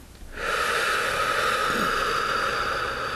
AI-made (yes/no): no